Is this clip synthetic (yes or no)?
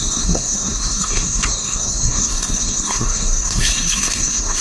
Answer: yes